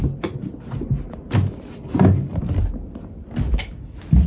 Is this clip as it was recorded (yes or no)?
yes